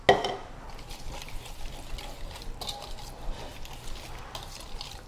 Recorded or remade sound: recorded